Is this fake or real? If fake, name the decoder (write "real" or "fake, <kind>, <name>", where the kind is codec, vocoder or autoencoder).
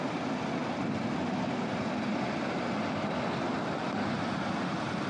real